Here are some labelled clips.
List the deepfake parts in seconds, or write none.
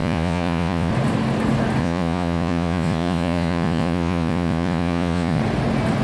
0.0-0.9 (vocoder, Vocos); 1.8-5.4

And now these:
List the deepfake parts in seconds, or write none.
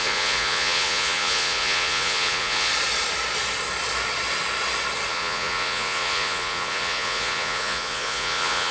0.0-2.7 (vocoder, Vocos); 5.1-8.7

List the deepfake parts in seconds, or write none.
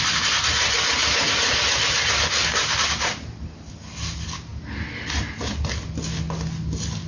none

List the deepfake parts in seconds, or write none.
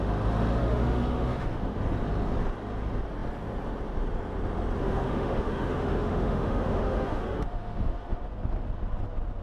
0.6-1.8 (autoencoder, DAC-VAE); 4.8-8.3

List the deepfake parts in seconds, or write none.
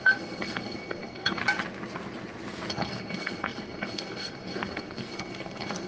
0.0-1.4 (codec, SNAC); 2.7-5.9